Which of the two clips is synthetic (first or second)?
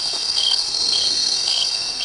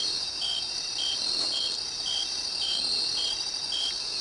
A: first